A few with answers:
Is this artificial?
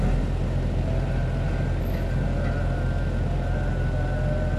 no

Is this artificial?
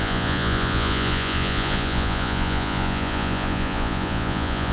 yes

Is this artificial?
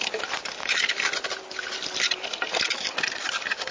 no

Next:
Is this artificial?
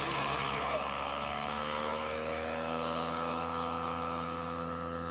yes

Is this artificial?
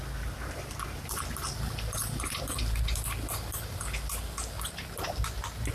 no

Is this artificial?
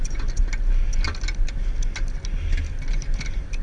no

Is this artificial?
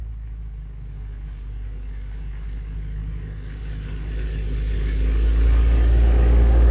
yes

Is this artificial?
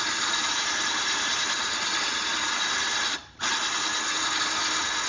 no